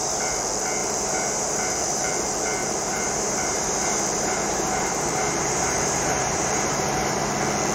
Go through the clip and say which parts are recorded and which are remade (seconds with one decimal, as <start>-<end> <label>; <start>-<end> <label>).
0.0-0.8 recorded; 0.8-2.1 remade; 2.1-2.6 recorded; 2.6-7.2 remade; 7.2-7.7 recorded